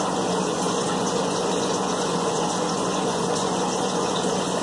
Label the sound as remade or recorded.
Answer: remade